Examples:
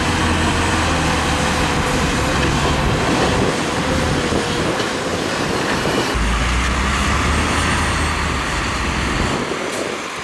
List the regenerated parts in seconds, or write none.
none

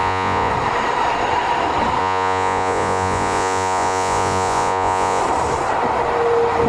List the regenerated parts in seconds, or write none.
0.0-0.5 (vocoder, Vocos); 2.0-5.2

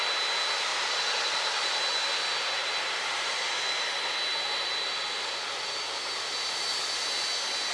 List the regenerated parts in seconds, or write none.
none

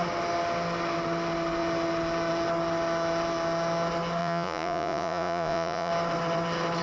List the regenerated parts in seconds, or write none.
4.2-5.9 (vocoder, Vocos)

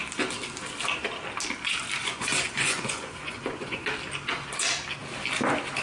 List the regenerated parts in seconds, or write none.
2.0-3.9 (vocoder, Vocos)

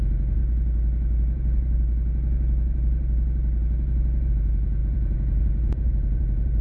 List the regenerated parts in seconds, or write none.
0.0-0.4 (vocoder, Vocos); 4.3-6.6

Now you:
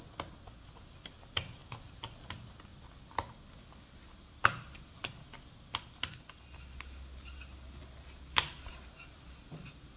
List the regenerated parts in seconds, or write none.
none